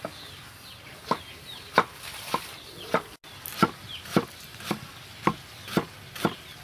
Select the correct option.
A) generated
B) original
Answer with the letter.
B